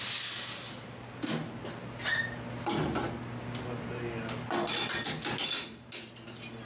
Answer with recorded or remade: recorded